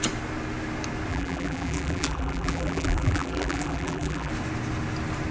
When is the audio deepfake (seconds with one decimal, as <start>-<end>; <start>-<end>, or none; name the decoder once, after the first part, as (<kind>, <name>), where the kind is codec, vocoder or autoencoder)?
1.1-4.3 (vocoder, BigVGAN v2)